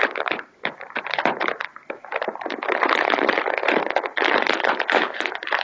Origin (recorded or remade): remade